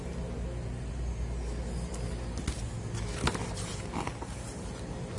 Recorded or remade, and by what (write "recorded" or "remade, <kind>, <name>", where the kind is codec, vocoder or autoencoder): recorded